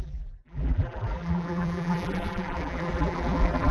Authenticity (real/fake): fake